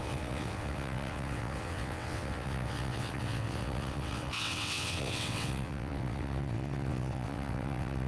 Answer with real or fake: fake